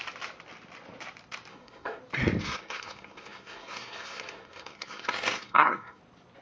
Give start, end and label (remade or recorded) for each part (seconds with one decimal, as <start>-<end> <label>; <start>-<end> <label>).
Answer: 0.0-1.5 recorded; 1.5-2.0 remade; 2.0-2.4 recorded; 2.4-6.0 remade; 6.0-6.4 recorded